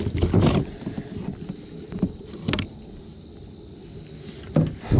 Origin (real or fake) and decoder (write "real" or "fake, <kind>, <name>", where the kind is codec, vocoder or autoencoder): real